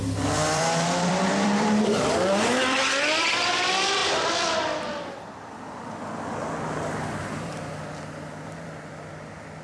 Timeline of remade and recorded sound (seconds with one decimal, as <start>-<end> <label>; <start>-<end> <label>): 0.0-3.5 remade; 3.5-4.0 recorded; 4.0-7.6 remade; 7.6-9.6 recorded